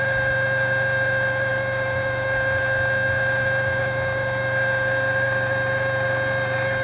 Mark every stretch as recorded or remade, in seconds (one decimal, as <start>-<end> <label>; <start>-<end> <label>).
0.0-6.8 recorded